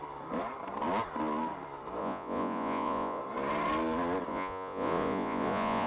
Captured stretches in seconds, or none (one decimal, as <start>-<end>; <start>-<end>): 0.0-2.0; 3.2-4.3

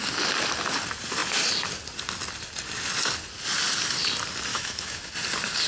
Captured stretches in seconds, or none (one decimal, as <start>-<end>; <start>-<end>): 0.0-4.5; 5.1-5.7

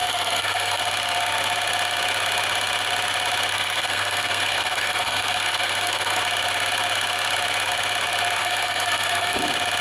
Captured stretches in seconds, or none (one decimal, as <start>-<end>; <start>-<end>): 0.8-3.5; 6.2-8.4; 9.4-9.8

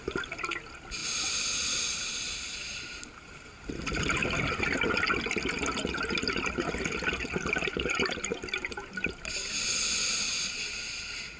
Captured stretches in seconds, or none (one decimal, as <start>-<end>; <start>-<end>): 0.0-11.4